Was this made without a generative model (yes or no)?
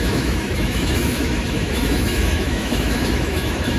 no